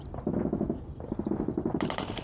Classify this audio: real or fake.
real